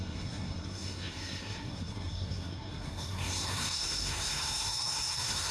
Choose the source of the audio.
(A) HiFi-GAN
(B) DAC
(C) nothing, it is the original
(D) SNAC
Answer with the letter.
D